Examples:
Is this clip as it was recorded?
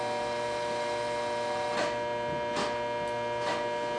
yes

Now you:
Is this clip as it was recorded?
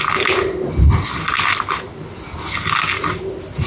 yes